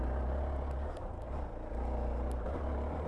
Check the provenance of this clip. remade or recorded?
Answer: recorded